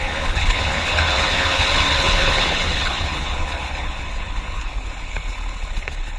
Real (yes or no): no